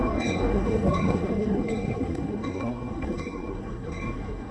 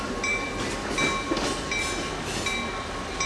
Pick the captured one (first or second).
second